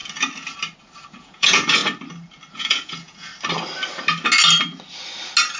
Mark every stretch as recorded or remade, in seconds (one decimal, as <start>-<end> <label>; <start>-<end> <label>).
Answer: 0.0-1.2 recorded; 1.2-1.8 remade; 1.8-2.5 recorded; 2.5-3.3 remade; 3.3-5.6 recorded